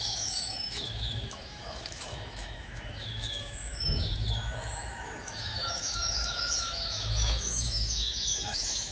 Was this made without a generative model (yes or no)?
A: no